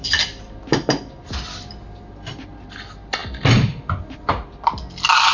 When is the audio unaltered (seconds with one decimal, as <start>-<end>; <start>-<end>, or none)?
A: 0.0-5.3